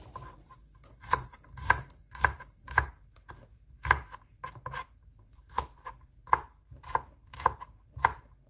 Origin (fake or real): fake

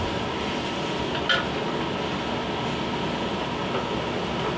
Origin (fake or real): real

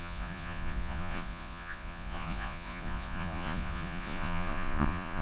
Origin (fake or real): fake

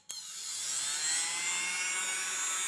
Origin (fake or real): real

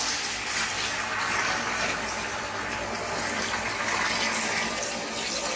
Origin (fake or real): real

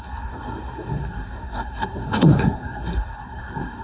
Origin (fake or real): fake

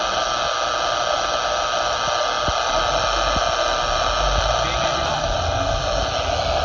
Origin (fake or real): real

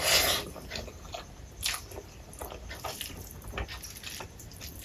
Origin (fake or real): real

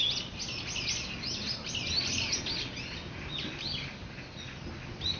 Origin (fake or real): real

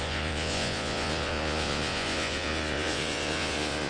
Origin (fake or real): fake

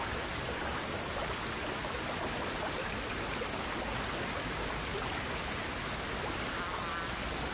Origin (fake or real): real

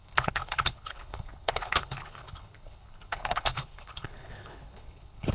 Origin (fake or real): fake